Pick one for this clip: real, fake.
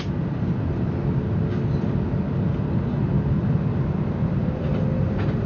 real